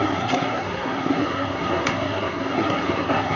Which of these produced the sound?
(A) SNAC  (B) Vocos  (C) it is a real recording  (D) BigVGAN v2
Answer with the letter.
A